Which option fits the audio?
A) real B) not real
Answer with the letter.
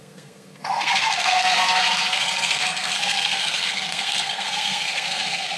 B